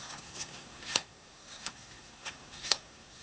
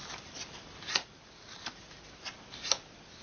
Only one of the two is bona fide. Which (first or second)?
second